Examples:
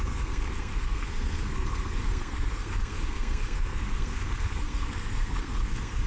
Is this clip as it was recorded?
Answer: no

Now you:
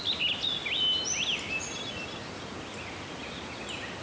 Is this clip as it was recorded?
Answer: yes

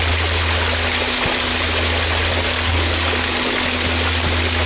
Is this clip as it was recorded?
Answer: yes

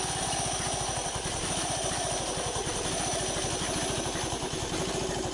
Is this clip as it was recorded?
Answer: yes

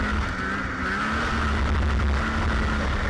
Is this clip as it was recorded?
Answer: yes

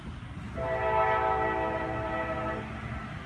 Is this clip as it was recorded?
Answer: yes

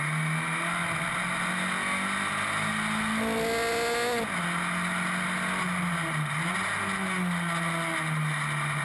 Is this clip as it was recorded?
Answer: yes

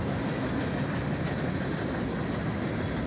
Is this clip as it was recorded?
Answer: yes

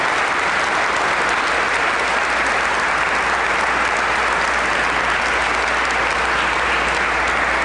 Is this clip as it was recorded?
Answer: yes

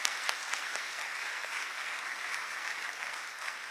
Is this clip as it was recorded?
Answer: no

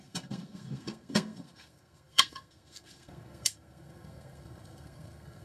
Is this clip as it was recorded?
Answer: no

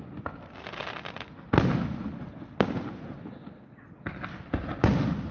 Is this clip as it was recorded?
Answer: yes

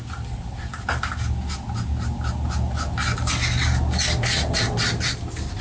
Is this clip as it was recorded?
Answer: yes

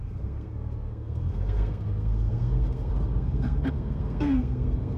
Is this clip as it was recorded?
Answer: no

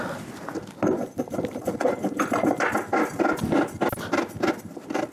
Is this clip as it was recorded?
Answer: yes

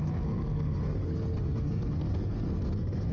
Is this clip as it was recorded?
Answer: no